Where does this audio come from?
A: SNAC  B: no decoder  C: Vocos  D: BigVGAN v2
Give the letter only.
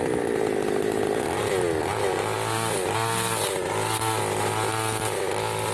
B